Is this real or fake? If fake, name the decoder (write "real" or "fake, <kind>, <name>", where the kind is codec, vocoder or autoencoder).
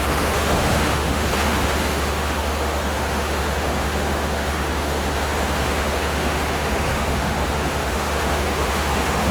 fake, autoencoder, DAC-VAE